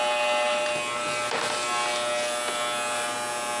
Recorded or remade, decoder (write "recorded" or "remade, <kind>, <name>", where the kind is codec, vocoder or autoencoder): recorded